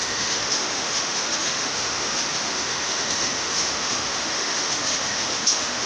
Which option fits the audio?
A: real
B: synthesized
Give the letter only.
B